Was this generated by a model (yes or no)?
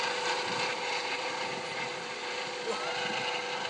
no